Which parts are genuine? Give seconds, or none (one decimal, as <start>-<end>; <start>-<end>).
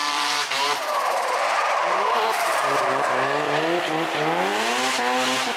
3.1-5.6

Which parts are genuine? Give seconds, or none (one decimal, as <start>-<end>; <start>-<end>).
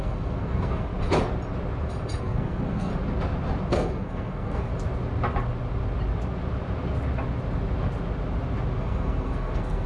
0.9-2.2; 2.9-3.7; 4.7-8.8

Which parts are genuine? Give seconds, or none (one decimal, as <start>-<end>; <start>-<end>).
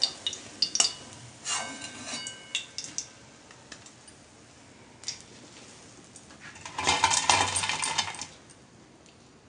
0.0-9.5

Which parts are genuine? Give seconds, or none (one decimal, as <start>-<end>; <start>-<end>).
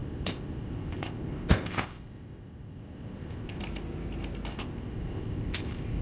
3.6-4.5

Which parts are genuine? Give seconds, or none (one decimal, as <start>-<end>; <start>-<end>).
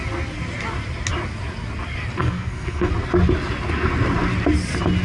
0.0-2.2; 2.9-5.0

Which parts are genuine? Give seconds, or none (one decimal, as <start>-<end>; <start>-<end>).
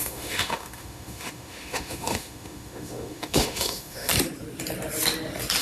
4.1-5.6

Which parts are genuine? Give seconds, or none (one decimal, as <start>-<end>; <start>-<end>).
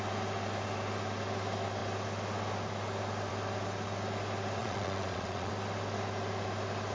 0.0-4.6; 5.5-6.9